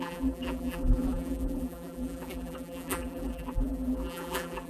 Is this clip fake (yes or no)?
yes